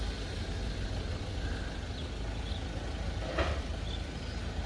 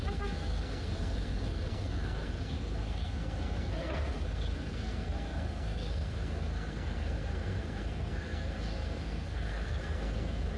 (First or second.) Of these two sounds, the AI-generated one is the second